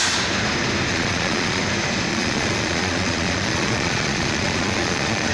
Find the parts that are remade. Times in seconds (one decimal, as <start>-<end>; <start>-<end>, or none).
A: 0.9-1.6; 2.1-5.3